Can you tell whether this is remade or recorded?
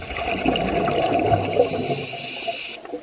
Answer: recorded